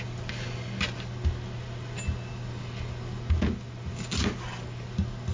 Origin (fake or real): real